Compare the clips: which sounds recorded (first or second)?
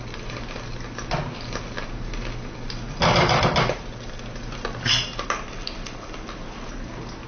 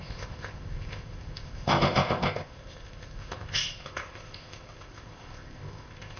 first